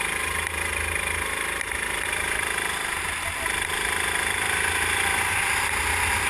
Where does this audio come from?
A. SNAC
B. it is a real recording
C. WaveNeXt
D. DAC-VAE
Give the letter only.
B